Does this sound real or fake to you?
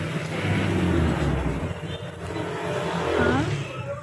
real